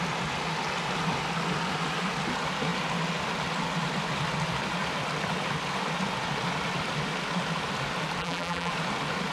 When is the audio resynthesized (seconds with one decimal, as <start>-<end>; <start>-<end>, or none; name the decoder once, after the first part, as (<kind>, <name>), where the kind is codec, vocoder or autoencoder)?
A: 8.2-8.7 (vocoder, BigVGAN v2)